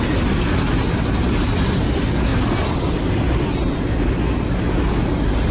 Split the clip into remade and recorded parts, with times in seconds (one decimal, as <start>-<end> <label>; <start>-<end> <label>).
0.0-5.5 recorded